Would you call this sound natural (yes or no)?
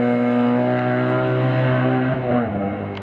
yes